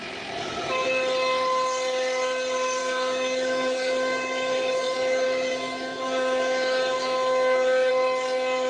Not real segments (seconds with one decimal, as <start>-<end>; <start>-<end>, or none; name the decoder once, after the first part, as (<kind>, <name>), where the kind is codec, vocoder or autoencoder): 2.8-7.9 (autoencoder, DAC-VAE)